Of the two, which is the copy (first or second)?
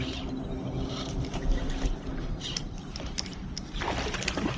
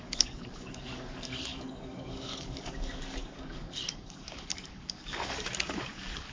second